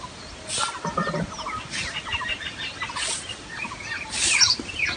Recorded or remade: recorded